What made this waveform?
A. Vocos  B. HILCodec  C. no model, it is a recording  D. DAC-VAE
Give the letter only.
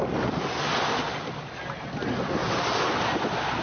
C